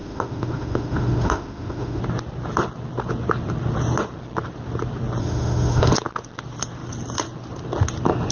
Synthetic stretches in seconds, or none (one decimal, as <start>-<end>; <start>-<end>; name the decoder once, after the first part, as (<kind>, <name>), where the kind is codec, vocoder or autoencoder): 0.0-2.0 (autoencoder, DAC-VAE); 5.2-5.9